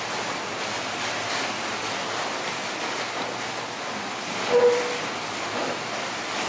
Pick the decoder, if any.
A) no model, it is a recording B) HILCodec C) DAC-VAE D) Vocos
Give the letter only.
A